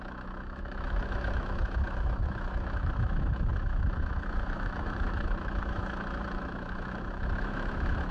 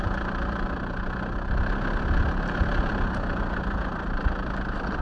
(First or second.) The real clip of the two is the second